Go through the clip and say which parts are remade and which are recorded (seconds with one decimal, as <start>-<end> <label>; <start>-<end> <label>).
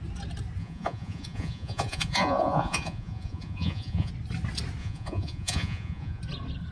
0.0-0.6 recorded; 0.6-4.1 remade; 4.1-4.8 recorded; 4.8-6.2 remade; 6.2-6.7 recorded